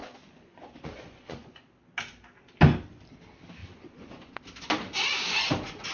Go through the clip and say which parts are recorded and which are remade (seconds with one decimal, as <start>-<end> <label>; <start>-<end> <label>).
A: 0.0-1.6 remade; 1.6-3.6 recorded; 3.6-4.4 remade; 4.4-5.9 recorded